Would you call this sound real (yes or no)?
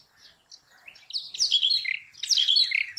yes